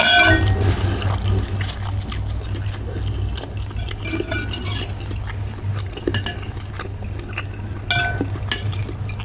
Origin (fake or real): real